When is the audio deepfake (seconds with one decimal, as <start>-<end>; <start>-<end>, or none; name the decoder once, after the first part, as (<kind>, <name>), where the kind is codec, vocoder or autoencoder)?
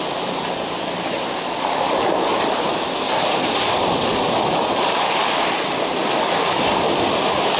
none